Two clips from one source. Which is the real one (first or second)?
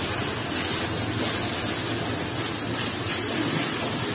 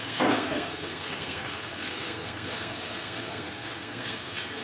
first